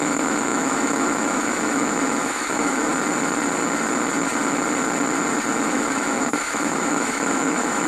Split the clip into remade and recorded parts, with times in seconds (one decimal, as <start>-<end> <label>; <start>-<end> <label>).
0.0-2.9 remade; 2.9-5.5 recorded; 5.5-7.9 remade